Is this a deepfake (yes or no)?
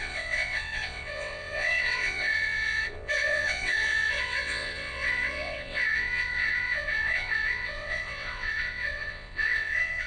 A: yes